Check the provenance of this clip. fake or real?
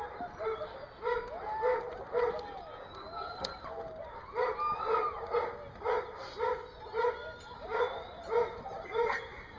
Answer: real